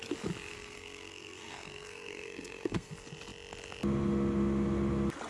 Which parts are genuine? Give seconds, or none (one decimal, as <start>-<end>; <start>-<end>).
0.0-0.5; 2.9-5.3